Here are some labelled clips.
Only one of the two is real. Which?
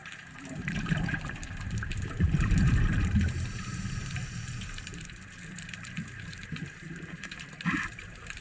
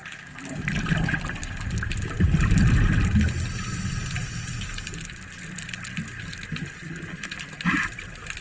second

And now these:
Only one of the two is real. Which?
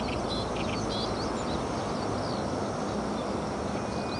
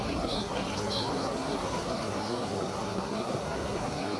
first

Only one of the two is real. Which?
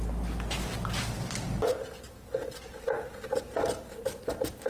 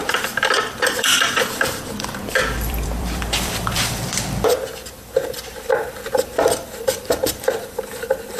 first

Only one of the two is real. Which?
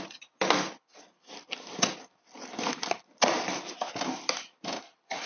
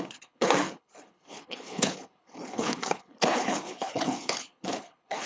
first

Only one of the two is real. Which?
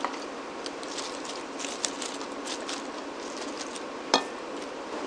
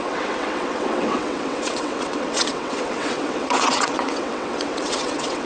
first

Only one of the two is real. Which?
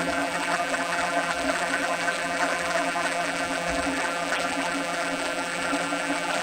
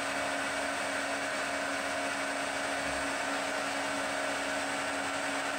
second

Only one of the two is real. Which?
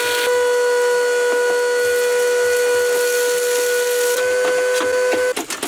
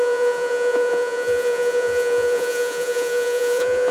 first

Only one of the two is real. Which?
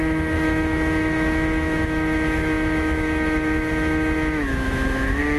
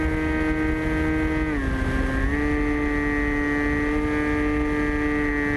second